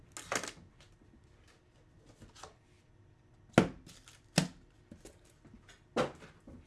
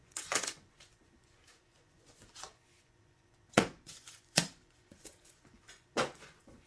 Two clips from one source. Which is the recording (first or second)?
first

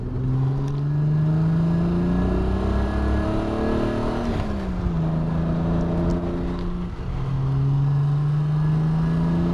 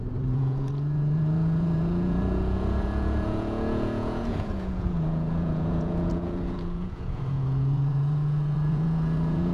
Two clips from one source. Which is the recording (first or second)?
first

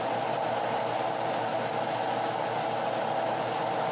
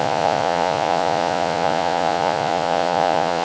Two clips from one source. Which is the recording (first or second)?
first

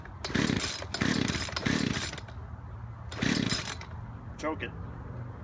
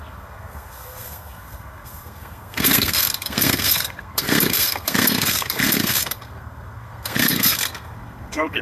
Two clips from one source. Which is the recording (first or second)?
first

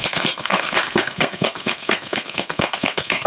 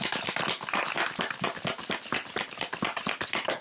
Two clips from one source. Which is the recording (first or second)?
second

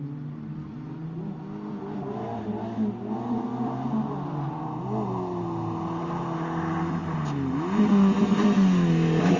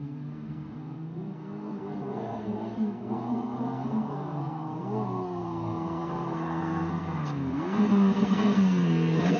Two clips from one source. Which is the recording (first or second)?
first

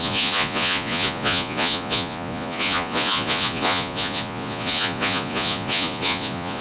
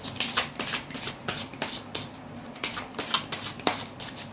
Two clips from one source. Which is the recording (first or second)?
second